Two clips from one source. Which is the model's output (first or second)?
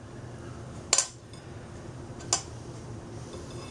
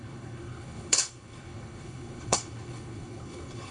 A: second